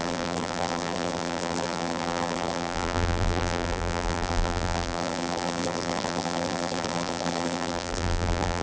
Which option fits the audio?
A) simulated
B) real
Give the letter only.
A